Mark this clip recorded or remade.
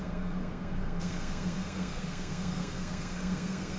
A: remade